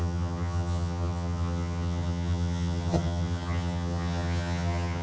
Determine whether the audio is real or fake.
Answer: fake